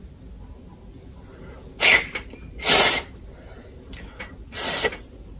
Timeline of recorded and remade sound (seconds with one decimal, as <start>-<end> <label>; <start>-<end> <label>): 0.0-5.4 recorded